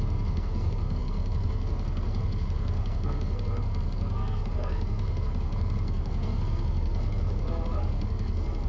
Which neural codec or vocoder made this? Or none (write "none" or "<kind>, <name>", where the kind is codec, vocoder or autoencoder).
codec, SNAC